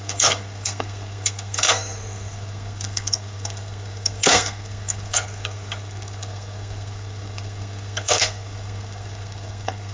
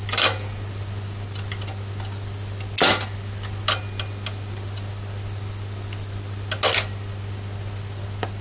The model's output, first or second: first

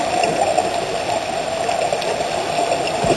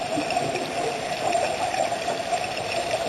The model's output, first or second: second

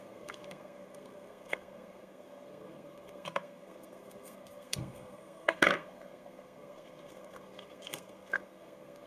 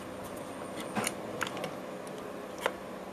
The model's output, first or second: first